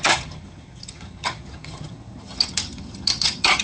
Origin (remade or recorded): remade